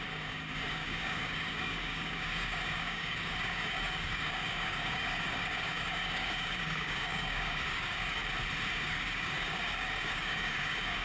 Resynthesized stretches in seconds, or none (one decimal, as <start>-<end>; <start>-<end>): 0.0-8.2; 8.7-11.0